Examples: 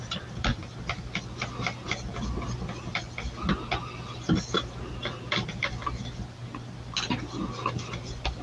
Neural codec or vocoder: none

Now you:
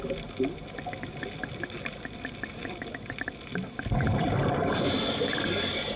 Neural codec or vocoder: none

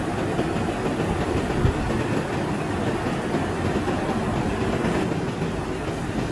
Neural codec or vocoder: none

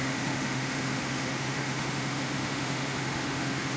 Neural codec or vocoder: autoencoder, DAC-VAE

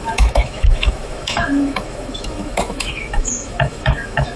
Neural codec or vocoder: autoencoder, DAC-VAE